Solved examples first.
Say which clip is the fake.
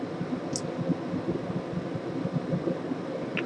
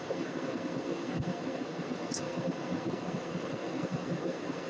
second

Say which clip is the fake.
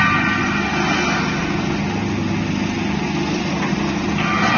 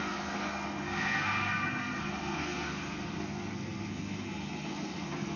second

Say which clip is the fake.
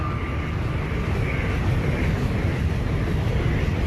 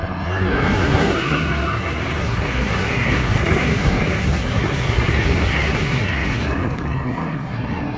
second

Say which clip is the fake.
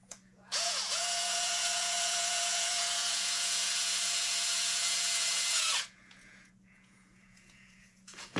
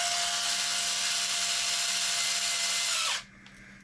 first